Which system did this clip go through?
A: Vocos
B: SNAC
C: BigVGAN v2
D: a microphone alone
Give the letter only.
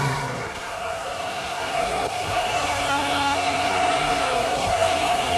B